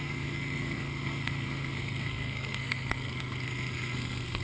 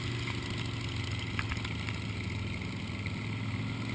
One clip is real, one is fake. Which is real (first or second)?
second